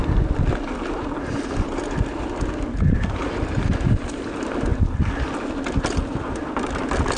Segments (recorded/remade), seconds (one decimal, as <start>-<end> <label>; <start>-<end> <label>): 0.0-7.2 recorded